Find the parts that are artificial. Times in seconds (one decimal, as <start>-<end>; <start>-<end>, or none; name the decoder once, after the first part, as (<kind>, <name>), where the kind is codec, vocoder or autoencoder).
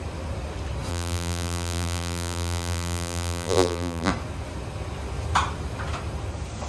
0.9-4.1 (vocoder, BigVGAN v2)